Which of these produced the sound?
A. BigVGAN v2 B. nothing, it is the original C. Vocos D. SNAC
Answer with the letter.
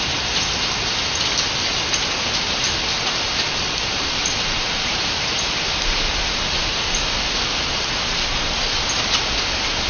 B